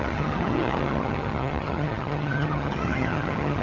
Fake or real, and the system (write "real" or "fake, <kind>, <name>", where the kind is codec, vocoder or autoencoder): fake, vocoder, HiFi-GAN